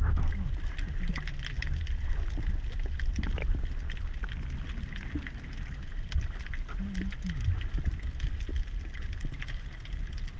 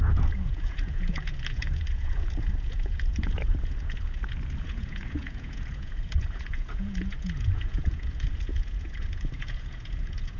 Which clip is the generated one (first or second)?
second